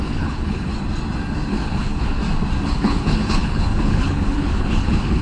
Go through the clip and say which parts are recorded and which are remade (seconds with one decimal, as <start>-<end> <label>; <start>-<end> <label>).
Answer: 0.0-0.7 remade; 0.7-1.5 recorded; 1.5-2.2 remade; 2.2-2.7 recorded; 2.7-5.2 remade